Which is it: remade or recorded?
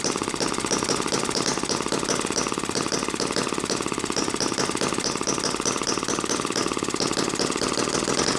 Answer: recorded